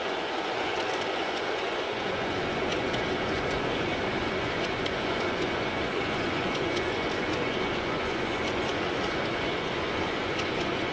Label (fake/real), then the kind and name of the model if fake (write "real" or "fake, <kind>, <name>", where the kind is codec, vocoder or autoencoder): fake, vocoder, Vocos